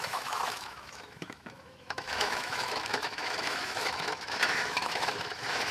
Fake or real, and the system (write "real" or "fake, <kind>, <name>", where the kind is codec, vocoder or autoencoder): fake, autoencoder, DAC-VAE